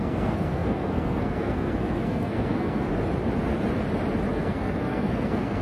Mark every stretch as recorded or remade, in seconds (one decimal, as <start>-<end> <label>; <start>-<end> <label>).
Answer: 0.0-2.9 remade; 2.9-4.3 recorded; 4.3-5.6 remade